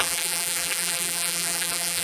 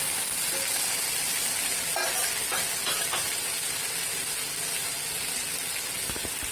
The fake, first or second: first